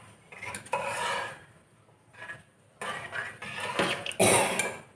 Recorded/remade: recorded